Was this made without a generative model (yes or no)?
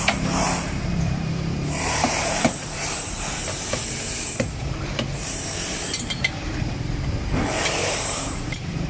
no